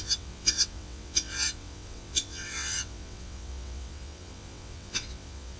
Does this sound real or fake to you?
fake